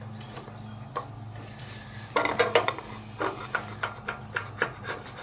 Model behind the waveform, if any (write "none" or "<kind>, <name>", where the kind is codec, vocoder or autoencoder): none